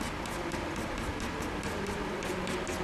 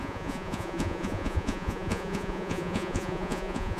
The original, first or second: first